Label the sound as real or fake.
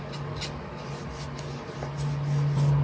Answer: real